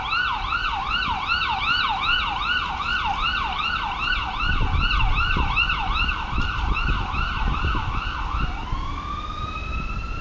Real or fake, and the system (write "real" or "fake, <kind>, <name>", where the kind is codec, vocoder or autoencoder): real